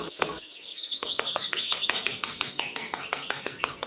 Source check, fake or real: fake